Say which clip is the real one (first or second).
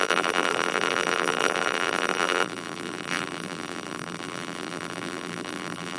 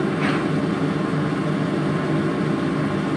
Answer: second